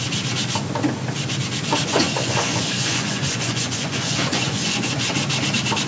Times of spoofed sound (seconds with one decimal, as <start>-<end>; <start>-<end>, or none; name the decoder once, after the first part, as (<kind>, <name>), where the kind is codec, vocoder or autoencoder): 1.8-5.1 (vocoder, Vocos)